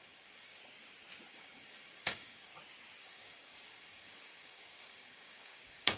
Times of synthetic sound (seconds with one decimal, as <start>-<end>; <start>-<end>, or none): 0.0-0.6; 1.3-2.5; 3.0-6.0